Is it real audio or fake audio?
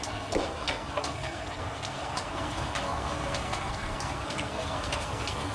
fake